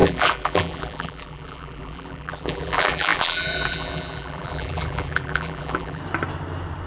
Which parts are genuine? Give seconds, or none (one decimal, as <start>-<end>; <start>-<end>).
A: 6.0-6.9

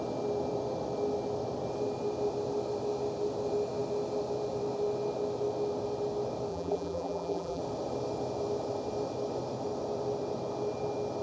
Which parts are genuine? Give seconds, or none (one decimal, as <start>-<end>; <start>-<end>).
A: 0.0-6.5; 7.6-11.2

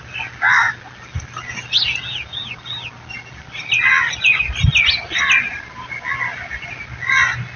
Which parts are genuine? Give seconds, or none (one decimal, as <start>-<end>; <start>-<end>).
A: 0.0-7.6

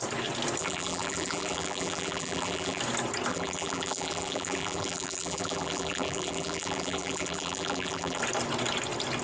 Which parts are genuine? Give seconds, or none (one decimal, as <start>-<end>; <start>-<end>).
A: 0.0-0.6; 2.8-3.3; 8.2-9.2

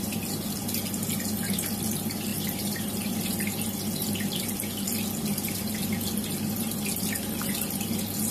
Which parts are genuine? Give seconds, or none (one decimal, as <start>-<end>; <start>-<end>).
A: 0.0-2.3; 3.3-8.3